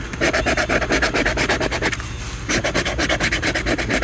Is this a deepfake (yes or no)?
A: no